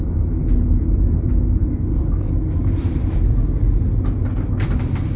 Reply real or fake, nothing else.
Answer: real